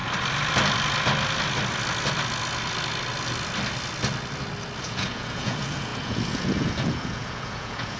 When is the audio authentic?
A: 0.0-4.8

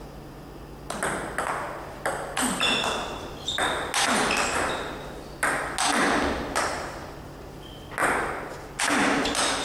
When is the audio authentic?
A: 0.0-9.6

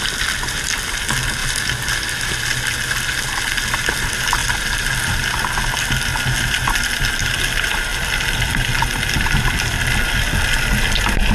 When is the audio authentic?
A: 0.0-4.4; 5.6-7.9; 10.1-11.3

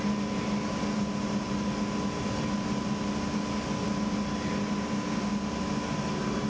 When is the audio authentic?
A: 0.0-6.5

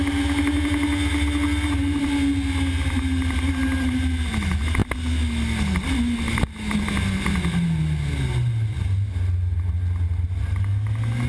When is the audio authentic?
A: 0.0-11.3

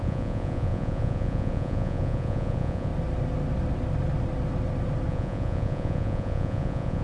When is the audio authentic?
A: 2.9-5.1

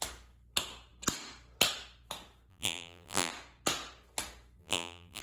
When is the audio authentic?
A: 0.0-2.5; 3.3-4.6

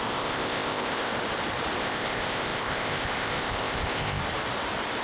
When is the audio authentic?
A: 1.1-1.8; 4.2-5.0